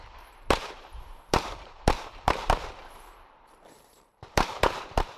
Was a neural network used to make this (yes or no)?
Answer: yes